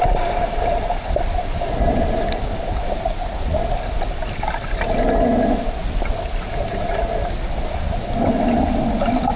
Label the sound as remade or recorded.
recorded